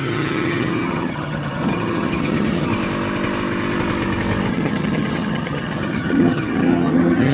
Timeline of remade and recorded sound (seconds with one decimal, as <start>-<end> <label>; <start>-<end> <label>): 0.0-2.7 remade; 2.7-4.5 recorded; 4.5-7.3 remade